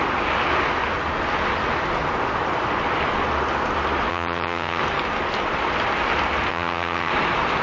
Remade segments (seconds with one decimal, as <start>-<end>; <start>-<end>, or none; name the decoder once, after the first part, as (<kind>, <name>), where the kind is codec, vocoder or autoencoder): 4.1-4.8 (vocoder, HiFi-GAN); 6.5-7.1